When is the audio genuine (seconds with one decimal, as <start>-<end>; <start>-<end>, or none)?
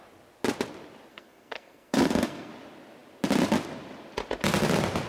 0.0-1.1; 2.5-5.1